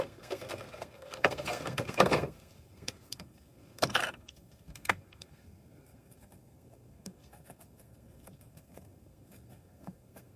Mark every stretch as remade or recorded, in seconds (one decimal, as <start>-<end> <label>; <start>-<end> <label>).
0.0-10.4 remade